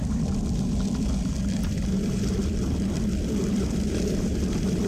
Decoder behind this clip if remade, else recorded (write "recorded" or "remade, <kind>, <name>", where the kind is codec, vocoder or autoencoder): remade, vocoder, BigVGAN v2